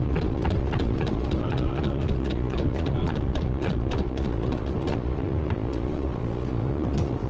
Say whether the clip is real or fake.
fake